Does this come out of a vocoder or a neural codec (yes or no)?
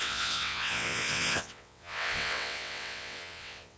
yes